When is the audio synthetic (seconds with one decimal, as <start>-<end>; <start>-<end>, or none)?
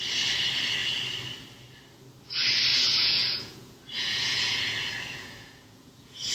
2.7-6.3